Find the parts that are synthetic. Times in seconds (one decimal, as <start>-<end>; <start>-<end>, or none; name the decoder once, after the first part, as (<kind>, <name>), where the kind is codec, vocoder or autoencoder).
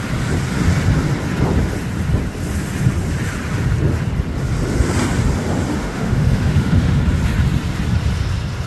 5.8-7.0 (autoencoder, DAC-VAE)